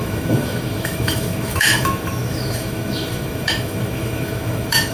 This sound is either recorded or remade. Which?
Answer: remade